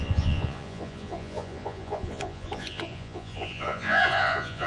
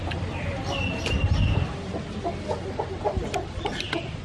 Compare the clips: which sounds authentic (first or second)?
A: second